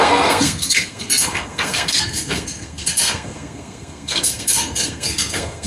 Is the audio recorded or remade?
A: remade